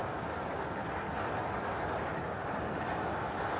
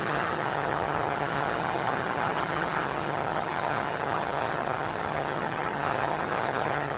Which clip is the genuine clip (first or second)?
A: first